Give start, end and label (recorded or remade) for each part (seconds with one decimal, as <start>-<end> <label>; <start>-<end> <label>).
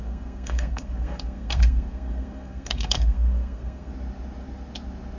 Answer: 0.0-3.9 remade; 3.9-5.2 recorded